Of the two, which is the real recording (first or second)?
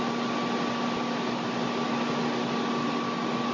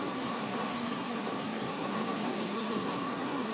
first